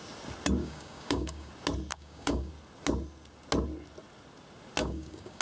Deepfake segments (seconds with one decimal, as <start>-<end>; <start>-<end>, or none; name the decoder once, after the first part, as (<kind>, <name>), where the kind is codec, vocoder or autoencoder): 0.6-1.5 (codec, DAC); 1.9-2.5; 4.8-5.4

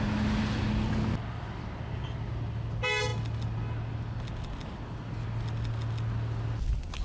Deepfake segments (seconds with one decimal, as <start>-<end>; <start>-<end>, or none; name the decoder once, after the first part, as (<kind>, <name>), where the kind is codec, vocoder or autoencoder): none